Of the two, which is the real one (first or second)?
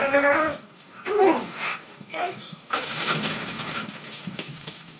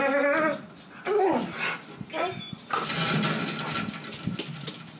second